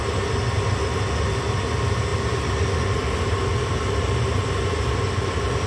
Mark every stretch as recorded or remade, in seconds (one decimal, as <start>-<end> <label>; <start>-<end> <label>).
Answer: 0.0-5.7 recorded